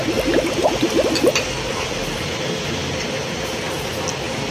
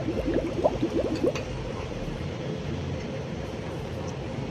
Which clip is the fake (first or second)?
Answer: second